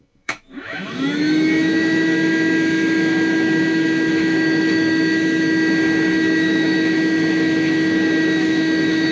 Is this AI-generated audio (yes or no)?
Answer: yes